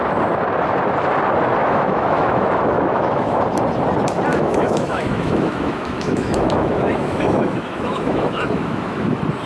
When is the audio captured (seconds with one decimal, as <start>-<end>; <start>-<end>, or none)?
0.0-1.6; 3.4-4.3; 9.1-9.5